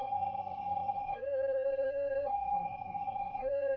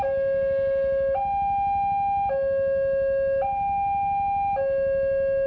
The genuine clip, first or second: second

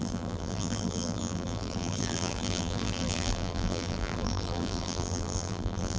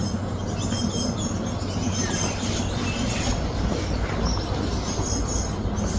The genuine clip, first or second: second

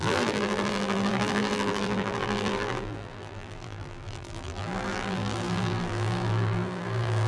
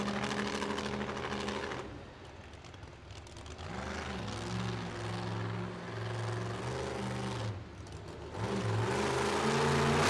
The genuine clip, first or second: second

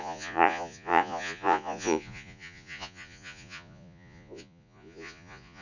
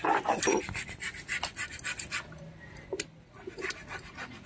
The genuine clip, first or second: second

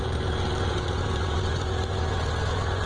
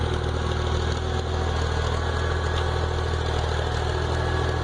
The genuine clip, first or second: second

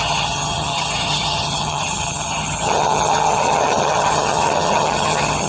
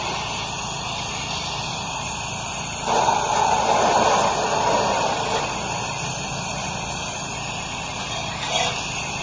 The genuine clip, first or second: second